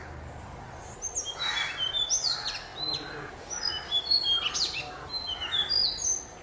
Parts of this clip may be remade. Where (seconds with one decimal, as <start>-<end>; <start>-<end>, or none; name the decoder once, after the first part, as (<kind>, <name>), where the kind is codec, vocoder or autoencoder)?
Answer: none